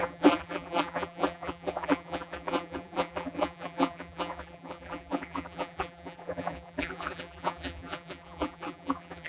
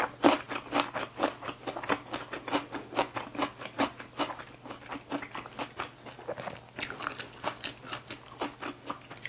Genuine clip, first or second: second